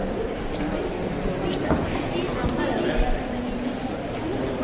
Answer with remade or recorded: recorded